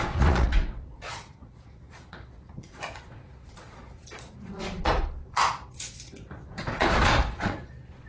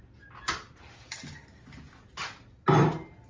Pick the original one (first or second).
second